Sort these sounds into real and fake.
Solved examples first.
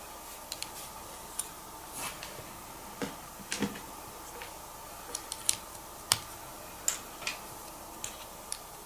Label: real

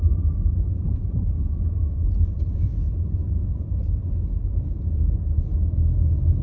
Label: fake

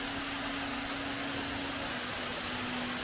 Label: real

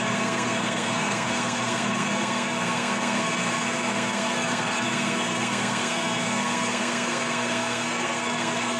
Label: fake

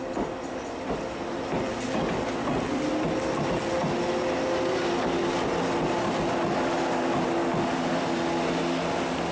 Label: real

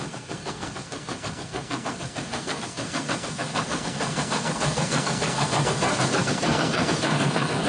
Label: fake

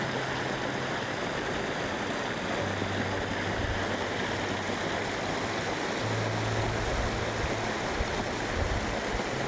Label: real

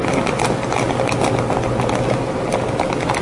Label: real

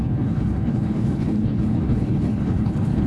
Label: fake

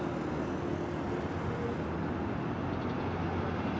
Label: real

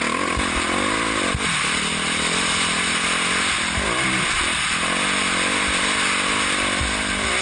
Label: real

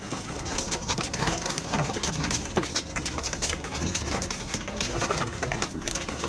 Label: fake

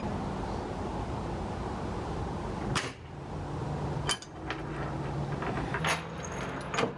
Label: real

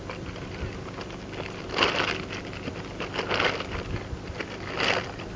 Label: real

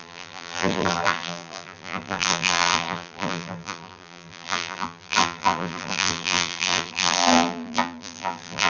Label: fake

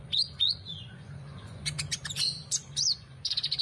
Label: fake